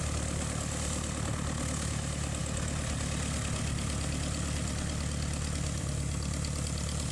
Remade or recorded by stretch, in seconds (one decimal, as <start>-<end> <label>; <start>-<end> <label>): 0.0-7.1 recorded